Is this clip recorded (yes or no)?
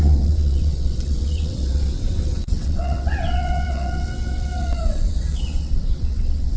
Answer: no